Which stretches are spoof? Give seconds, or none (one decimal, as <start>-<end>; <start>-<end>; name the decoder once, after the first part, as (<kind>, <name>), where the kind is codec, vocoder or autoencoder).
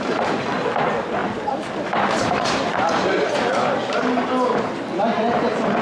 none